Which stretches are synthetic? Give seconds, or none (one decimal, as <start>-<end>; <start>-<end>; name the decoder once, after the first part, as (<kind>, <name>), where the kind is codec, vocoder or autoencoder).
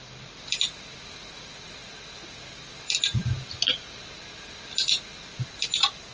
none